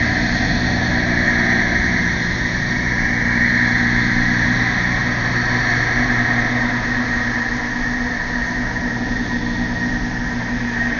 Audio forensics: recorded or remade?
recorded